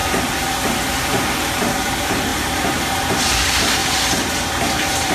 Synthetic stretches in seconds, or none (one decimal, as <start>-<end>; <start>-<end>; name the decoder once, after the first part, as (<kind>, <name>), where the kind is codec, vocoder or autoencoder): 1.6-3.8 (vocoder, BigVGAN v2); 4.5-5.1